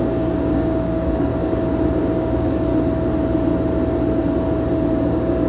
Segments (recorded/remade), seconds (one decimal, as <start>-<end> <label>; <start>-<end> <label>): 0.0-1.3 remade; 1.3-2.0 recorded; 2.0-2.7 remade; 2.7-4.9 recorded; 4.9-5.5 remade